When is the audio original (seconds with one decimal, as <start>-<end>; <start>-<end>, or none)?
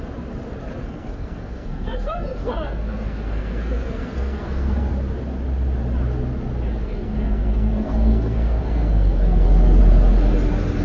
0.0-0.8; 4.9-6.8; 9.8-10.8